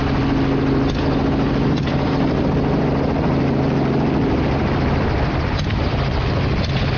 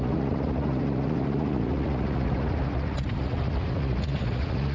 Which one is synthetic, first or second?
second